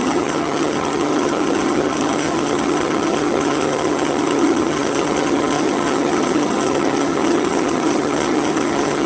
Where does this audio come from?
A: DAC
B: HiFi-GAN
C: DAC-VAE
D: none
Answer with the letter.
B